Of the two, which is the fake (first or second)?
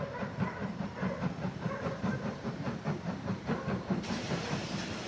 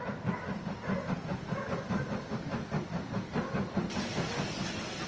first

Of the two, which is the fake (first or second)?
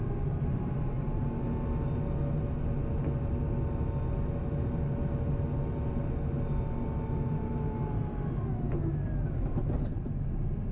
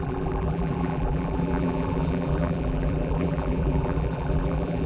second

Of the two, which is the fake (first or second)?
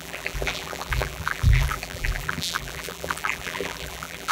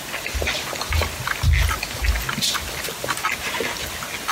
first